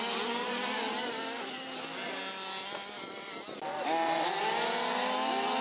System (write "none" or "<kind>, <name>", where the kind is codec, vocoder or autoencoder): none